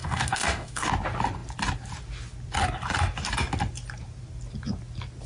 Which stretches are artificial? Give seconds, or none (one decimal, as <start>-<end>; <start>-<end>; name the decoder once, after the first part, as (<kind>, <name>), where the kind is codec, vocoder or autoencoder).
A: 0.0-0.9 (autoencoder, DAC-VAE)